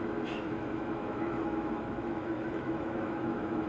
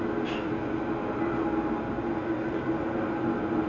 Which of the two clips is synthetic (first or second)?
first